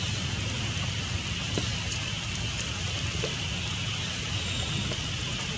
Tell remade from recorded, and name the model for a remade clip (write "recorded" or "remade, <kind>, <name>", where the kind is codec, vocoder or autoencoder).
recorded